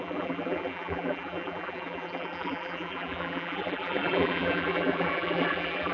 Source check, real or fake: fake